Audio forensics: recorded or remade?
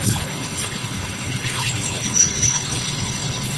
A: remade